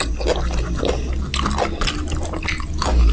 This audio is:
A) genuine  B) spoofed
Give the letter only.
A